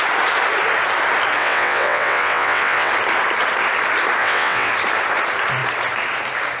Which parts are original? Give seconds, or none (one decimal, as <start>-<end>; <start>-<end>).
0.0-1.4; 2.9-4.2; 4.7-6.6